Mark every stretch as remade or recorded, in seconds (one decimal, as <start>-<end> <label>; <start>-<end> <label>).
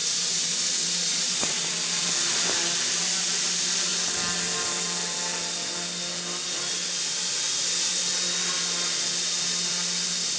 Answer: 0.0-1.7 remade; 1.7-10.4 recorded